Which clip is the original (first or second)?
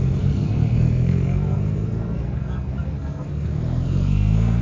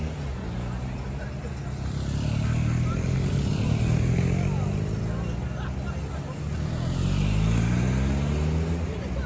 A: second